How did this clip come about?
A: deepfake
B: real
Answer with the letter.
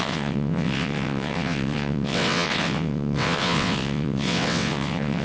A